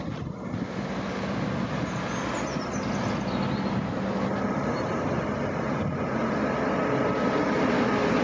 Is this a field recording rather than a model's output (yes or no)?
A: yes